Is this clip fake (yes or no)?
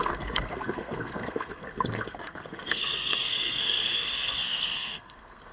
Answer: yes